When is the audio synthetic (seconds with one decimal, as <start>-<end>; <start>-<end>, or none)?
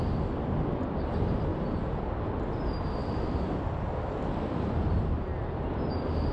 none